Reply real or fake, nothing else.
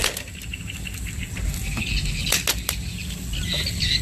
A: real